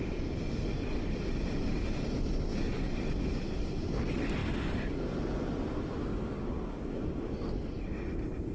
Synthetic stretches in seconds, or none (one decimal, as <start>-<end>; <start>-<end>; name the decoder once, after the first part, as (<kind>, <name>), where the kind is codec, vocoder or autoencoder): 6.0-7.3 (codec, DAC)